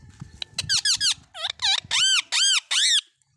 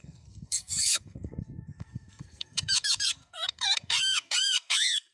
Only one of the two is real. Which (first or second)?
first